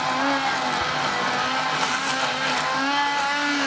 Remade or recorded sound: recorded